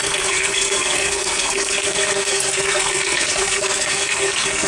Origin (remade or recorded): remade